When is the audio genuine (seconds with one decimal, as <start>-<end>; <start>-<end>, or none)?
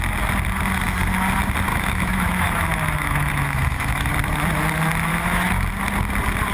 0.0-1.7; 4.1-5.1; 5.7-6.5